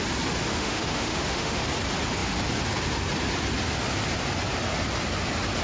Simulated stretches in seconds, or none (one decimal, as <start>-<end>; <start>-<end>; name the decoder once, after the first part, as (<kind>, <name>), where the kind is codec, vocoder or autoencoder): 0.5-1.6 (autoencoder, DAC-VAE)